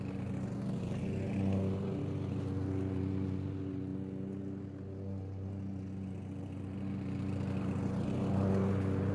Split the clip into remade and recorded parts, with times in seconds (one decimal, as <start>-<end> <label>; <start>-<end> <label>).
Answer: 0.0-9.1 recorded